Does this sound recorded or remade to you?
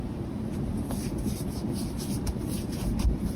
remade